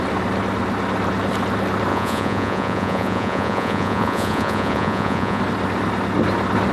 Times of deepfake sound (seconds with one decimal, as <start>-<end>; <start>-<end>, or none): 1.9-5.4